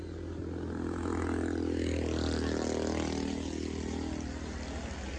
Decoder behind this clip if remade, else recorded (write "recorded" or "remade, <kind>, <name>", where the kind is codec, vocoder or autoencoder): recorded